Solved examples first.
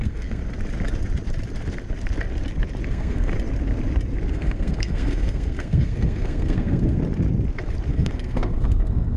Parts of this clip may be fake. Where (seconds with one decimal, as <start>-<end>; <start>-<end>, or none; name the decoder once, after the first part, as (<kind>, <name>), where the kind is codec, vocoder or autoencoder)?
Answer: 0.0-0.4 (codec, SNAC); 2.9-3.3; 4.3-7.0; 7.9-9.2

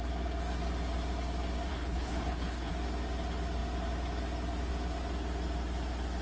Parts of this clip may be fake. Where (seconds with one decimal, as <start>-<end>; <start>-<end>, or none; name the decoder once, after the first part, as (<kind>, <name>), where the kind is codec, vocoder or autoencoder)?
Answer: 1.7-2.7 (codec, HILCodec)

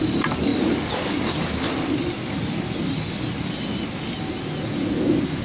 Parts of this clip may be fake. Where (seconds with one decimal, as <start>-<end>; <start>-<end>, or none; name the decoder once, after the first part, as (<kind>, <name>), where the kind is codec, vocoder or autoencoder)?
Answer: none

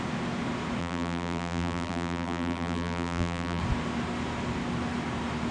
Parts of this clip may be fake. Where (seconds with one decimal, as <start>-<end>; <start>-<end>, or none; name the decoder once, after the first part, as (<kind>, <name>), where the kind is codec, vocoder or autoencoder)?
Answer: 0.8-3.6 (vocoder, BigVGAN v2)

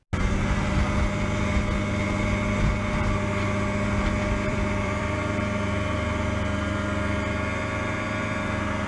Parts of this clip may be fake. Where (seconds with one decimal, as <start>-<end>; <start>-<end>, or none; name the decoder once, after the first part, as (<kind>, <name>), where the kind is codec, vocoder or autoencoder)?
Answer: 4.5-5.2 (vocoder, BigVGAN v2)

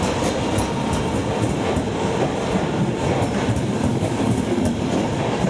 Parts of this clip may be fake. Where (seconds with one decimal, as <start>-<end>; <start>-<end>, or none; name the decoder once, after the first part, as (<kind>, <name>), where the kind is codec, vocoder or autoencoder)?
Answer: 3.9-5.1 (codec, DAC)

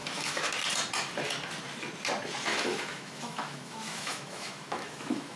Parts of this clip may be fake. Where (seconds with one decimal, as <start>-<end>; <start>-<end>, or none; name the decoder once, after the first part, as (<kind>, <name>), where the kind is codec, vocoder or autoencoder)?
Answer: 0.0-0.5 (autoencoder, DAC-VAE); 2.5-5.4

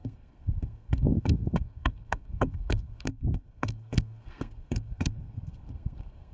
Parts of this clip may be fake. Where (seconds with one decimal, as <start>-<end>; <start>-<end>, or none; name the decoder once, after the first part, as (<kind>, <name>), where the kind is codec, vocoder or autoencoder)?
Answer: 0.0-6.3 (codec, SNAC)